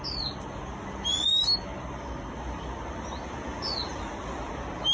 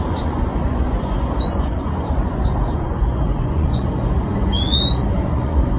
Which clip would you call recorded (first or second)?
first